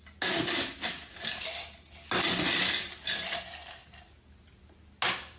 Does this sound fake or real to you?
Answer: real